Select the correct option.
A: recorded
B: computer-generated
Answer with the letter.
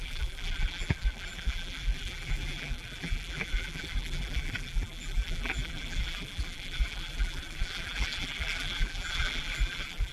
B